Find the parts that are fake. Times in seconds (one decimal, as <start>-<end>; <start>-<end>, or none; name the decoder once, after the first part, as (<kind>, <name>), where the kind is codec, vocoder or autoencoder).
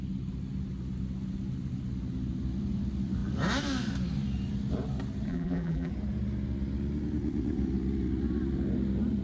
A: 5.3-5.9 (vocoder, BigVGAN v2)